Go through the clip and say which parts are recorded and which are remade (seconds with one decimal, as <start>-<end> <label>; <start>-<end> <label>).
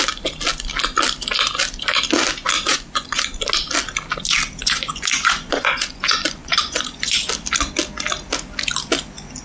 0.0-2.7 recorded; 2.7-3.3 remade; 3.3-4.6 recorded; 4.6-7.3 remade; 7.3-9.4 recorded